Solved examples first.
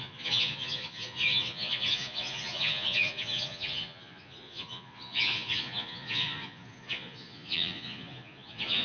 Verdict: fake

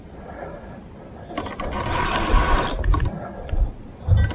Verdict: real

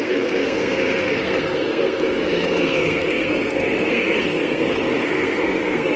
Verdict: fake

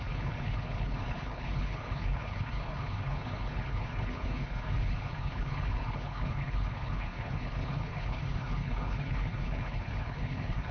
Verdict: fake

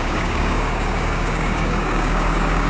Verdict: fake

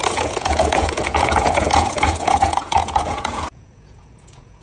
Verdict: fake